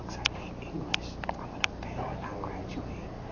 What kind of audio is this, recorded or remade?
recorded